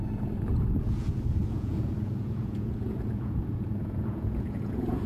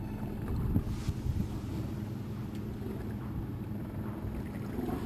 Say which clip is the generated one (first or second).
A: first